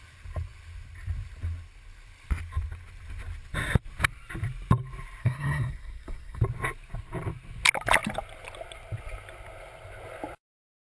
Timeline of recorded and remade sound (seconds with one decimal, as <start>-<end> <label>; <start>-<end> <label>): 0.0-5.2 recorded; 5.2-6.4 remade; 6.4-10.9 recorded